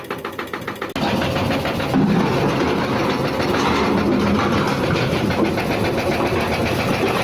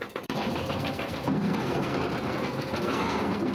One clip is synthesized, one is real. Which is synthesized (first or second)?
second